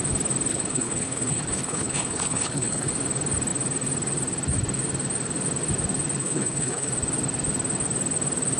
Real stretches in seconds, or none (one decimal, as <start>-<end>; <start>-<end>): 0.0-0.5; 2.9-6.2; 6.9-8.6